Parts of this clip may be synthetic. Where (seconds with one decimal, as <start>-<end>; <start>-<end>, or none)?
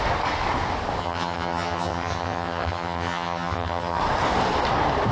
1.0-4.0